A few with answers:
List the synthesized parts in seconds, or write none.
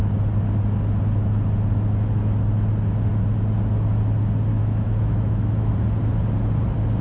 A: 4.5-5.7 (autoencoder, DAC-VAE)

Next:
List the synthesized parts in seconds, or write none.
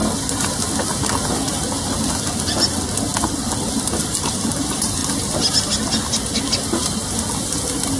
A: none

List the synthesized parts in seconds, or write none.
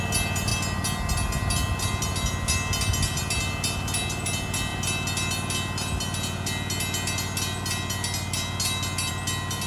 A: none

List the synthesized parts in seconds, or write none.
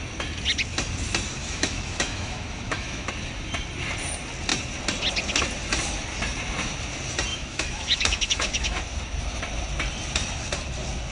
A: 1.4-3.1 (autoencoder, DAC-VAE); 7.3-8.8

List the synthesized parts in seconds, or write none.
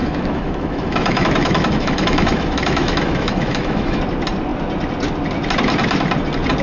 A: 0.0-4.0 (autoencoder, DAC-VAE)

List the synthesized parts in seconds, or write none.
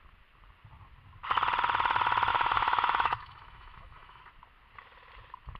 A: 2.3-4.2 (autoencoder, DAC-VAE)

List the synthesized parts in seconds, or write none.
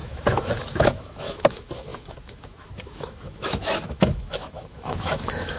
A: 0.0-5.6 (autoencoder, DAC-VAE)